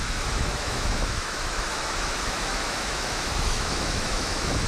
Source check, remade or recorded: remade